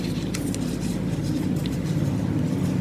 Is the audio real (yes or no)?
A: no